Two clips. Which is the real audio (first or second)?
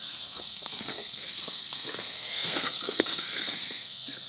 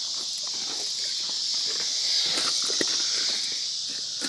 second